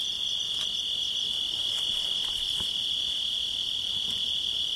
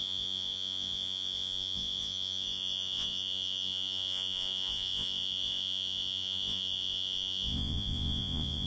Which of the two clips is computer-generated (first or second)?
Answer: second